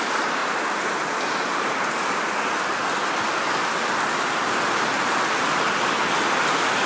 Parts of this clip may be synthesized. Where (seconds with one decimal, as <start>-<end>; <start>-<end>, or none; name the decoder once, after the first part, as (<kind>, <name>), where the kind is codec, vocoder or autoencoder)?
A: none